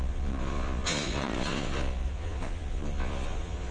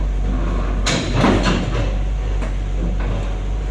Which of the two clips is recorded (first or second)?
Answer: second